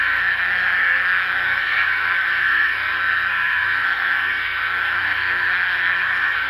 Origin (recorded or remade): remade